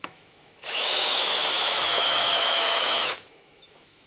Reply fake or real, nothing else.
fake